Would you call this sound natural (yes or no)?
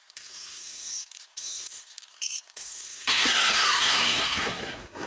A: no